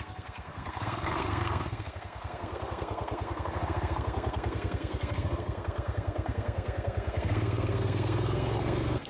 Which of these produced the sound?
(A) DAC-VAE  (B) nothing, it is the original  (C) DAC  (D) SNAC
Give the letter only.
D